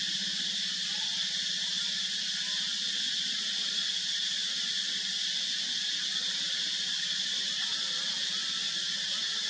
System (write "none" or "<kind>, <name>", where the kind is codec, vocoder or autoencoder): none